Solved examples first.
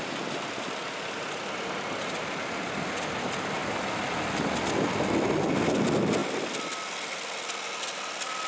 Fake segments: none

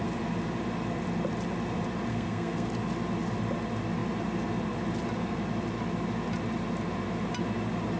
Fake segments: 2.1-2.7

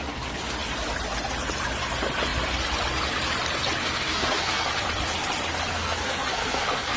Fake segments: 3.8-4.7; 5.7-7.0

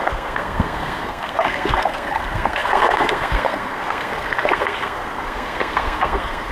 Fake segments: 0.0-6.5

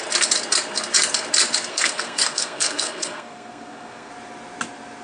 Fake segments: 1.7-4.1

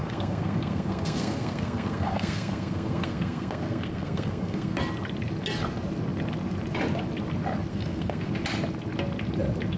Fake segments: 0.0-4.8; 7.7-8.3

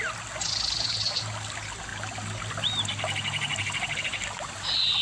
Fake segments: none

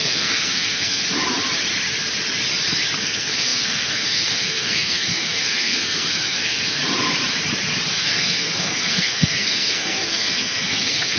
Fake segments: 0.0-1.0; 3.0-6.8; 7.9-11.2